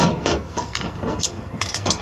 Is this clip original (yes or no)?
no